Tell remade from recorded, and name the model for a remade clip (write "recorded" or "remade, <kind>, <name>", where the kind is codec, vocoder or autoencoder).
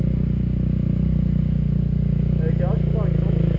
recorded